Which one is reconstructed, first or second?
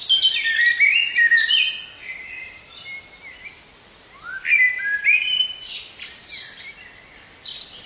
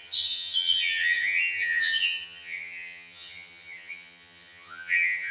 second